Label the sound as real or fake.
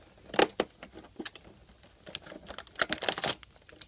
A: real